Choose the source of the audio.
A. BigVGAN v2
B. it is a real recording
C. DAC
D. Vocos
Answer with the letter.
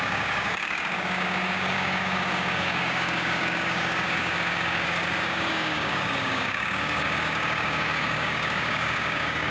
C